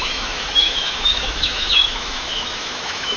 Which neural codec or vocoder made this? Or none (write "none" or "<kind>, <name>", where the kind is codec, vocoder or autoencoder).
autoencoder, DAC-VAE